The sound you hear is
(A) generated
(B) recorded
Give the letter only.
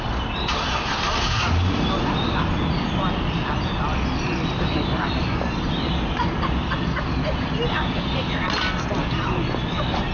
B